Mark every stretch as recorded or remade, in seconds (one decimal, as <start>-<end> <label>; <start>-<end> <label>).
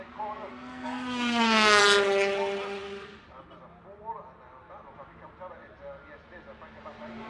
0.0-0.5 recorded; 0.5-1.8 remade; 1.8-7.3 recorded